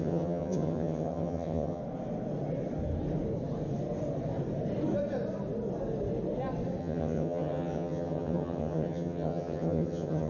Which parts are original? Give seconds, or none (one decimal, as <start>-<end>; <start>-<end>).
1.8-6.8